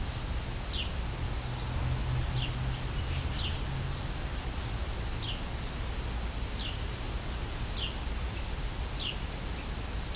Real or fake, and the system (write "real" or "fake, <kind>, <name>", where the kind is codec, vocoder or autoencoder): real